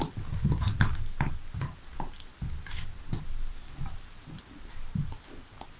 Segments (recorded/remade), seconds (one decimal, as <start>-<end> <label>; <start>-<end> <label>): 0.0-5.8 recorded